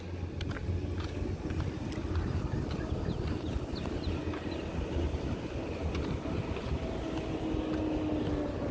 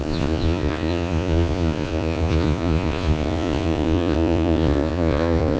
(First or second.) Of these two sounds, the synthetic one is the second